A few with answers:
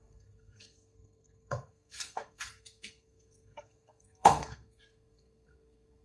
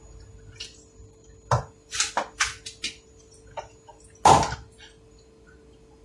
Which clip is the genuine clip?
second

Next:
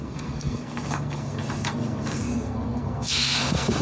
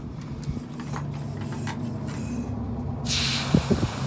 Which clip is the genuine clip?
second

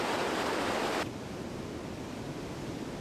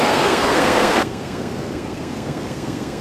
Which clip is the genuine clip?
first